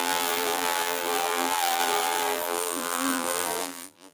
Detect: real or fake fake